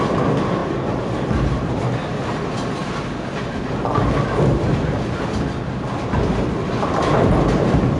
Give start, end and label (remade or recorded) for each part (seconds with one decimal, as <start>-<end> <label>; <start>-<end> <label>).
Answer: 0.0-8.0 recorded